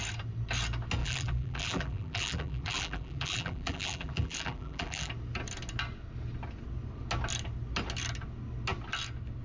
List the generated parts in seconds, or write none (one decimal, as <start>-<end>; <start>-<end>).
1.0-5.1